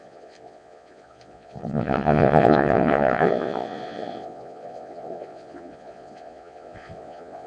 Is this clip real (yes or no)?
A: no